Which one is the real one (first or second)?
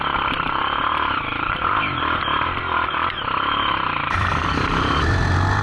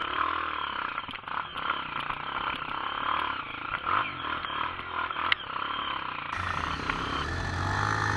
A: second